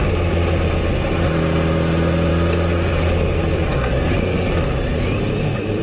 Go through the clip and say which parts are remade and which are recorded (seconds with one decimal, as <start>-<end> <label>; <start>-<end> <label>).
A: 0.0-5.8 recorded